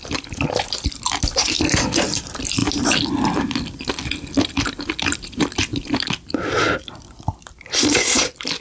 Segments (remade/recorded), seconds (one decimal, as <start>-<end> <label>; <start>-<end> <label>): 0.0-8.6 recorded